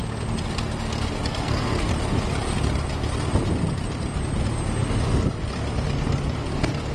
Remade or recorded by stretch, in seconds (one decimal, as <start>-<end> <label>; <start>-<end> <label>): 0.0-1.3 recorded; 1.3-1.9 remade; 1.9-6.9 recorded